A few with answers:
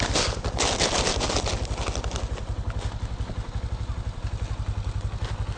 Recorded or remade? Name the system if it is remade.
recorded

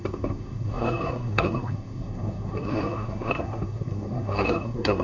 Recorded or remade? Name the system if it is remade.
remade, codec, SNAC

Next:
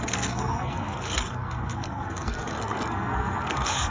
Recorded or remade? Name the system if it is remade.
remade, codec, SNAC